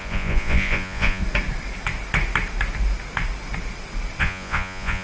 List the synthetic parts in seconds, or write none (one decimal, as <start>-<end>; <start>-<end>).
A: 0.0-1.2; 4.2-5.0